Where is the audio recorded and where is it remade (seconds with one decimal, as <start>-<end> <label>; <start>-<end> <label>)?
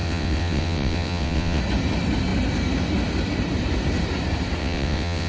0.0-1.6 remade; 1.6-4.6 recorded; 4.6-5.3 remade